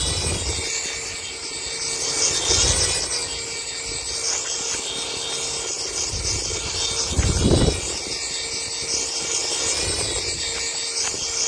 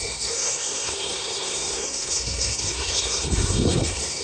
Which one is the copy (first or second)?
second